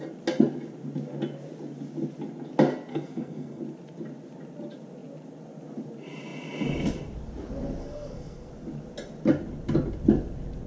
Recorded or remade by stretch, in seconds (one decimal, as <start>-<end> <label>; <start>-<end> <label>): 0.0-2.9 recorded; 2.9-3.6 remade; 3.6-7.8 recorded; 7.8-8.5 remade; 8.5-10.7 recorded

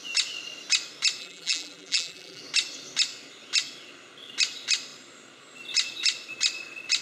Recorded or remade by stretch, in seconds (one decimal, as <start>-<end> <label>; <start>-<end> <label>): 0.0-1.2 recorded; 1.2-2.4 remade; 2.4-7.0 recorded

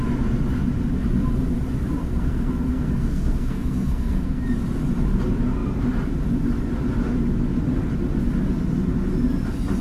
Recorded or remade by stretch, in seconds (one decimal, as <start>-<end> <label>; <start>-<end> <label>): 0.0-2.0 recorded; 2.0-4.4 remade; 4.4-9.8 recorded

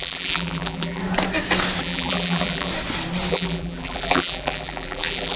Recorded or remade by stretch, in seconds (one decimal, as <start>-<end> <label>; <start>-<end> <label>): 0.0-1.0 remade; 1.0-1.8 recorded; 1.8-2.7 remade; 2.7-3.3 recorded; 3.3-5.4 remade

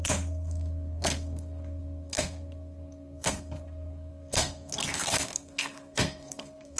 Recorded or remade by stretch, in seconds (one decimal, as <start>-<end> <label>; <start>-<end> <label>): 0.0-6.8 remade